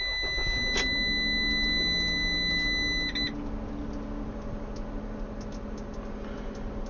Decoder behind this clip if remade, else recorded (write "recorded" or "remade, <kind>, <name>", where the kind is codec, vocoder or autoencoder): recorded